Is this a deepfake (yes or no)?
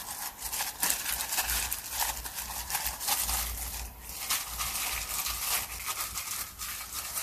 no